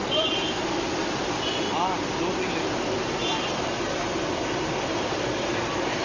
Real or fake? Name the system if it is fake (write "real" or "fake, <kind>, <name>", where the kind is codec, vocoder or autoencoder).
real